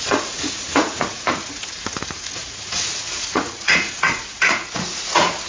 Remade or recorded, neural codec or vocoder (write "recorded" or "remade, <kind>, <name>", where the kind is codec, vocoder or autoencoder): remade, vocoder, Vocos